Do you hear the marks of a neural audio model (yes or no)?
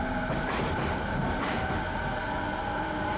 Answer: yes